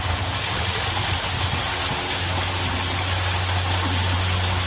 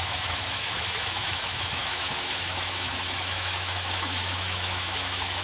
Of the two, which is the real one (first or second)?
first